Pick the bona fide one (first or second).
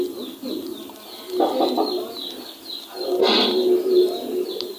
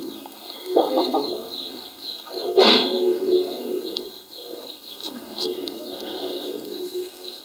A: first